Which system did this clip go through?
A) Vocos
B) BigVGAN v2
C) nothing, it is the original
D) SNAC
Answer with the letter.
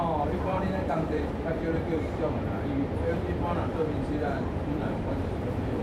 B